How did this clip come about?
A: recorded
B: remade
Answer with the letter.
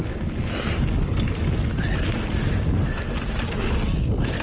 A